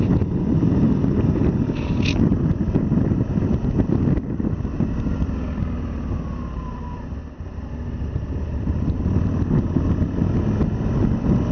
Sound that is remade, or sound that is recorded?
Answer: recorded